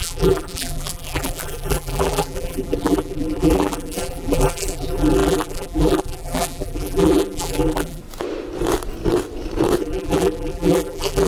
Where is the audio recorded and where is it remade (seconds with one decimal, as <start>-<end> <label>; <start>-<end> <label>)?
0.0-8.0 remade; 8.0-9.8 recorded; 9.8-11.3 remade